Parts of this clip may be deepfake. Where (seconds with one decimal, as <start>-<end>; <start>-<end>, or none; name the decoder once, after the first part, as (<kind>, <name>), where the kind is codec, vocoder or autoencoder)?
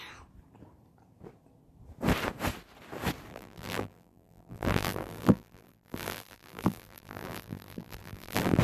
3.3-8.6 (vocoder, BigVGAN v2)